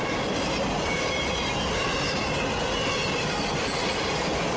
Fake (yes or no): no